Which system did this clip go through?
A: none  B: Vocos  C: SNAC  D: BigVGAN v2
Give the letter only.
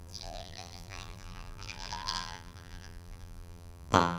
D